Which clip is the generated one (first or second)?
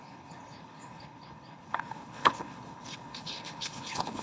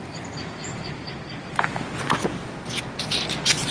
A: first